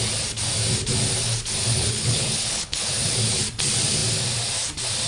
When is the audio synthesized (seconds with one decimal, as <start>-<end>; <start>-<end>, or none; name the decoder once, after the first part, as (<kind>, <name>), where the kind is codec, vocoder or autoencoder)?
1.7-2.9 (codec, HILCodec)

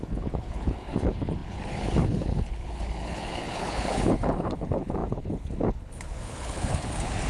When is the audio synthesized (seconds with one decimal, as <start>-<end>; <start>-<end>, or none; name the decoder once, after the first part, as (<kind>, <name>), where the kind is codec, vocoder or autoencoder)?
0.0-7.3 (codec, HILCodec)

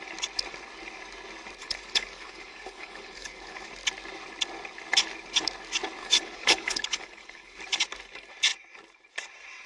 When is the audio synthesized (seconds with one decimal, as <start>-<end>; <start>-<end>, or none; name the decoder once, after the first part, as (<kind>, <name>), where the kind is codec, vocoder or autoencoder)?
1.6-3.7 (codec, HILCodec); 6.0-7.6

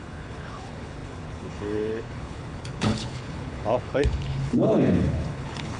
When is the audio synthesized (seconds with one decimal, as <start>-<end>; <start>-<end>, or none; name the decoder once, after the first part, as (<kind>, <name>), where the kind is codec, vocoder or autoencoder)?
0.0-5.8 (codec, HILCodec)

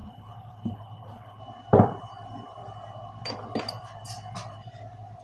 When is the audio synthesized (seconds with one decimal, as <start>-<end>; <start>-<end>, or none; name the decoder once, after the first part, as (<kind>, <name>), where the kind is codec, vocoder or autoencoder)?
0.0-1.4 (codec, HILCodec)